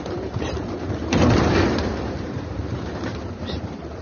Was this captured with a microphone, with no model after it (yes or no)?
no